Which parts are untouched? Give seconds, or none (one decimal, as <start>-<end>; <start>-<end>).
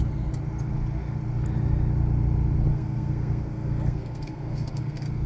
0.0-2.7